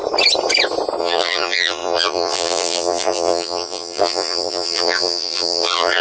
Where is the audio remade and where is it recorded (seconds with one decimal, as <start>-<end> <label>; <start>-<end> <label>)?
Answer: 0.0-1.0 recorded; 1.0-6.0 remade